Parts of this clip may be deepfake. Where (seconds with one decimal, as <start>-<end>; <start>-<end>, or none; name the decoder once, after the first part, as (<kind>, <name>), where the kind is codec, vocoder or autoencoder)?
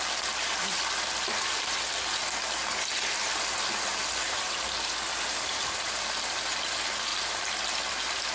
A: none